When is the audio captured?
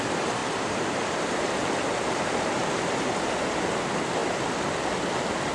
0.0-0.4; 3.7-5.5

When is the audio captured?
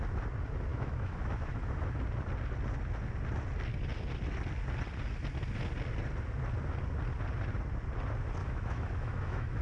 0.0-0.7; 1.6-8.4